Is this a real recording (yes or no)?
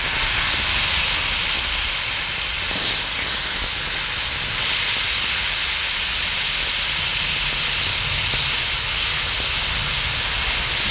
yes